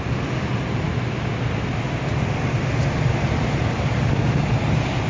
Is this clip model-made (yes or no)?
no